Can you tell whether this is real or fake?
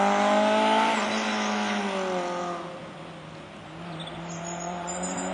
real